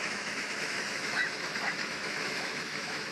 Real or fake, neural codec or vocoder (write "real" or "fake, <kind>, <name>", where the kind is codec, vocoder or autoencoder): fake, autoencoder, DAC-VAE